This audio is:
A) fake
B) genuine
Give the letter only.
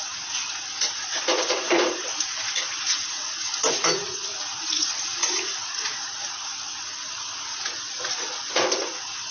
A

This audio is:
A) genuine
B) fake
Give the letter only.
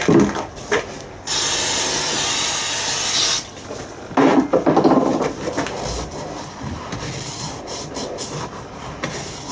A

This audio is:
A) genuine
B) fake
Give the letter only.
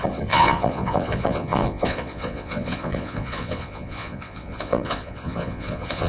B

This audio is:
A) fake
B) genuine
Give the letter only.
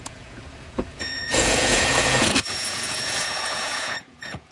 A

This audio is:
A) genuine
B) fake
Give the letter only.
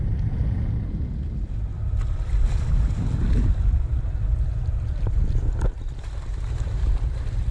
A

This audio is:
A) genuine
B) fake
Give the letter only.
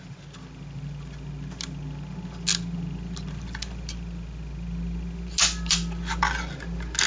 A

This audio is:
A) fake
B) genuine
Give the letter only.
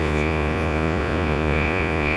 A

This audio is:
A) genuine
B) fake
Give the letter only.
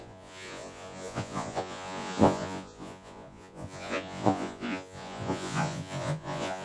B